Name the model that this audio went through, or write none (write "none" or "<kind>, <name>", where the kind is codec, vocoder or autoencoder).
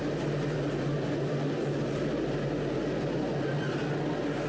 none